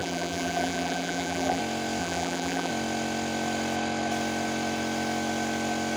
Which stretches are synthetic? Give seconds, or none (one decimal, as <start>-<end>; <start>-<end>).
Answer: 0.0-1.6; 2.0-2.7